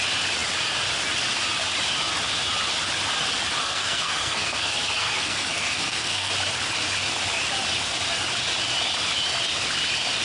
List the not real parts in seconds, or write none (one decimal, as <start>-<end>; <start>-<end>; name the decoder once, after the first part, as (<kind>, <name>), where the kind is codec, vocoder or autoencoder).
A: 3.6-6.3 (codec, SNAC)